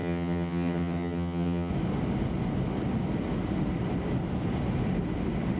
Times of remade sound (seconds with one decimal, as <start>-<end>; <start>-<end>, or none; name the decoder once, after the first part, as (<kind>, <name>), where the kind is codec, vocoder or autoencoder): 0.0-1.7 (vocoder, HiFi-GAN)